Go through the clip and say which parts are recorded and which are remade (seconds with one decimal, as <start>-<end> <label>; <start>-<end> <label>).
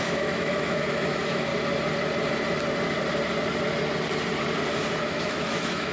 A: 0.0-1.5 remade; 1.5-5.0 recorded; 5.0-5.9 remade